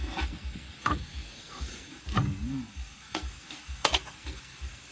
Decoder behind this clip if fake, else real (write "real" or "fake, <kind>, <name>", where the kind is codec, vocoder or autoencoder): fake, codec, SNAC